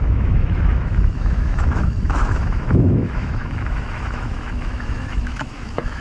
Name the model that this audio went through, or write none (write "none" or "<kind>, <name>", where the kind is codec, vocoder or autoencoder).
autoencoder, DAC-VAE